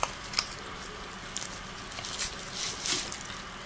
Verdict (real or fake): real